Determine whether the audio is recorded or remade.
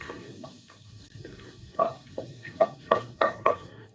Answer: remade